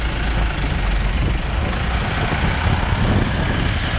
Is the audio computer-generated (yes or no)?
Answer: no